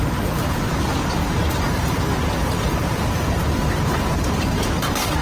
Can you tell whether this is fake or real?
fake